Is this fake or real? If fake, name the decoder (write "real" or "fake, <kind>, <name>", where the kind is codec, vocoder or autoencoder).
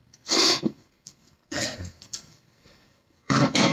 fake, codec, SNAC